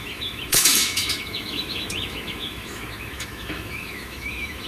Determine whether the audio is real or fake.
fake